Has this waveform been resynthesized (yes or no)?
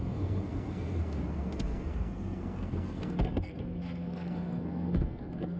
yes